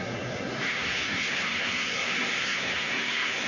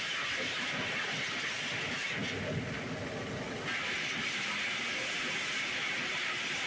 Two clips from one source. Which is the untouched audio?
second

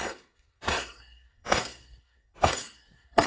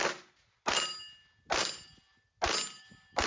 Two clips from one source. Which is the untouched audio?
second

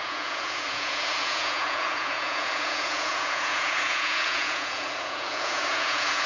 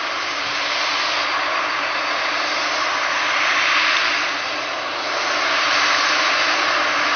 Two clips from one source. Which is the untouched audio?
second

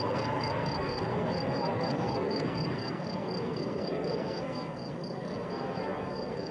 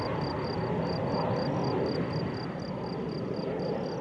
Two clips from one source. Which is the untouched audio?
second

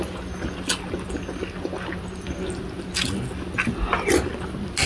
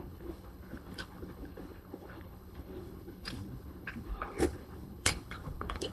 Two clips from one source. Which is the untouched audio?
first